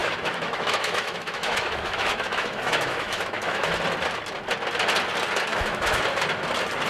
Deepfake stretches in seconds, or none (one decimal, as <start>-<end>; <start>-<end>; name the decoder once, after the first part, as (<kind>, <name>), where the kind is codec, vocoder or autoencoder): 0.0-3.7 (autoencoder, DAC-VAE); 5.5-6.0